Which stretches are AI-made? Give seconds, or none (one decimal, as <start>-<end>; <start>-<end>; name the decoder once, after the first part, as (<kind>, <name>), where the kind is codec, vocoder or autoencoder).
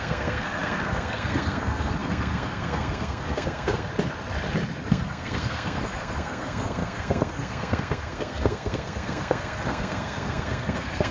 0.0-3.9 (codec, SNAC); 4.9-11.1